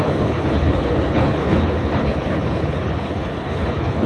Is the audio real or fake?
fake